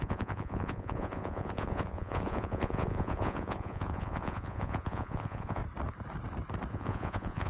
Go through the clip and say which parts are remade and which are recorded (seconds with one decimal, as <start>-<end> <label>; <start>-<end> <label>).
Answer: 0.0-5.6 remade; 5.6-6.7 recorded; 6.7-7.5 remade